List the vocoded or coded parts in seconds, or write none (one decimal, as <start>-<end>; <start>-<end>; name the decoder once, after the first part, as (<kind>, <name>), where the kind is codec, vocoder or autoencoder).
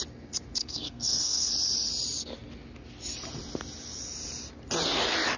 0.6-1.5 (codec, SNAC)